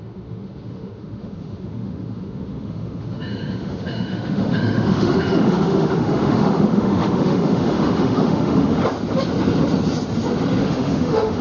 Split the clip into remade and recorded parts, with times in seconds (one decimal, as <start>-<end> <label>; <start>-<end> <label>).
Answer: 0.0-8.8 remade; 8.8-10.6 recorded; 10.6-11.4 remade